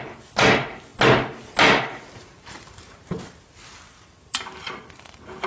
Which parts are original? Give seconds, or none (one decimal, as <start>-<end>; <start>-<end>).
0.0-5.5